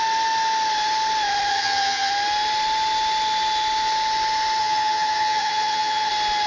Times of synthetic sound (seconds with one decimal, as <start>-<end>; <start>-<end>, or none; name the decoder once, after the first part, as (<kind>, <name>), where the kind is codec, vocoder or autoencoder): 1.5-2.1 (vocoder, HiFi-GAN); 4.6-6.1